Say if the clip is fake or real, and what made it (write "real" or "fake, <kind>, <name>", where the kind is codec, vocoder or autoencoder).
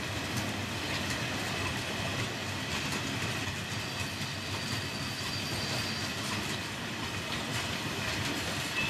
real